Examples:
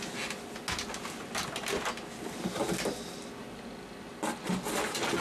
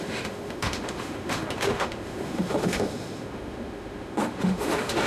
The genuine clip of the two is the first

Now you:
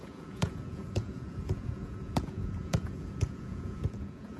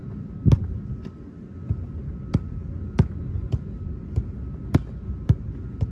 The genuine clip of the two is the second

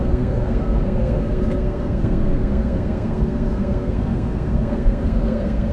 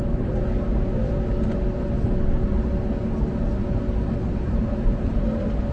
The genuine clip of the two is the second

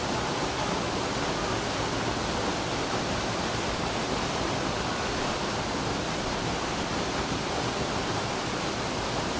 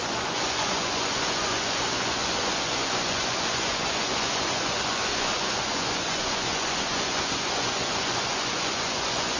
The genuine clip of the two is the first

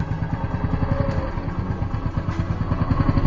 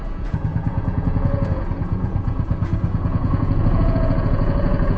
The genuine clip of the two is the first